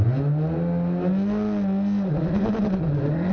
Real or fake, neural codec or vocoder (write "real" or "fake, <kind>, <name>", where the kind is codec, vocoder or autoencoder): real